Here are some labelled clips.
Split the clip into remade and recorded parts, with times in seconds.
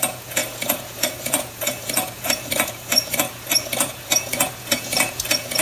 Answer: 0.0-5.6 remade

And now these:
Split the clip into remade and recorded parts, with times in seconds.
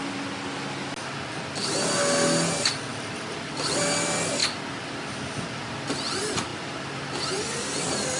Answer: 0.0-2.9 recorded; 2.9-3.8 remade; 3.8-8.2 recorded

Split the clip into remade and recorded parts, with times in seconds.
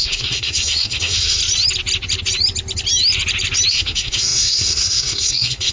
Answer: 0.0-1.4 remade; 1.4-3.7 recorded; 3.7-5.7 remade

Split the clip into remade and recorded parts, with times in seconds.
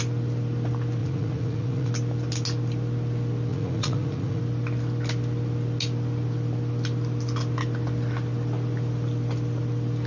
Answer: 0.0-1.0 recorded; 1.0-1.9 remade; 1.9-3.5 recorded; 3.5-4.4 remade; 4.4-10.1 recorded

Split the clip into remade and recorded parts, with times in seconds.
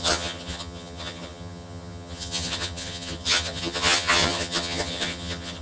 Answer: 0.0-5.6 remade